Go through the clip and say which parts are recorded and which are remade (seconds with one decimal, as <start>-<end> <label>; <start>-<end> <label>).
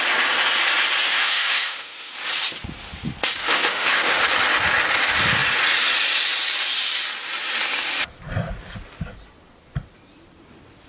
0.0-1.1 recorded; 1.1-2.1 remade; 2.1-3.4 recorded; 3.4-4.2 remade; 4.2-10.9 recorded